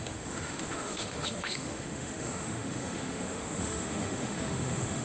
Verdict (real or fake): fake